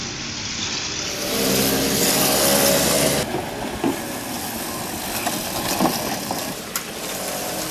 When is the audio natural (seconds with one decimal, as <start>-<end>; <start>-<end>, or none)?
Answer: 1.5-7.7